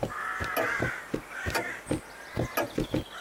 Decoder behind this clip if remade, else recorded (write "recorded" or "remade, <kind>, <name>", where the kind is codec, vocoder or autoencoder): recorded